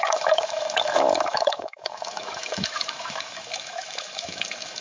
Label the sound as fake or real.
fake